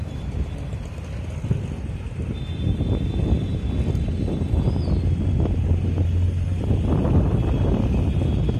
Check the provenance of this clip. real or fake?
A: real